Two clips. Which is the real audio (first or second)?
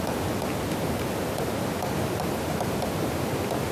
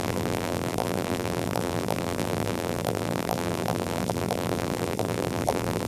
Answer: first